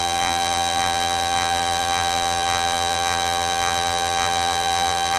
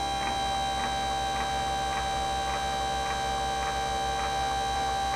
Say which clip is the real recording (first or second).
second